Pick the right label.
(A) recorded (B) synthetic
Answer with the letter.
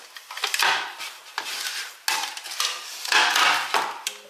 A